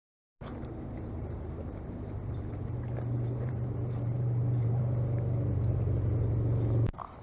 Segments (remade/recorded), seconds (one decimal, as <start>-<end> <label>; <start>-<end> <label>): 0.0-0.5 recorded; 0.5-4.8 remade; 4.8-7.2 recorded